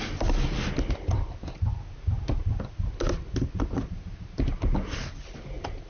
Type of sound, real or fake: real